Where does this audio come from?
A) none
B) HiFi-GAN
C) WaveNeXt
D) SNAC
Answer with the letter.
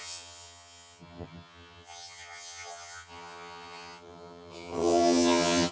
B